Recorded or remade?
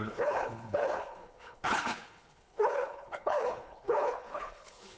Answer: remade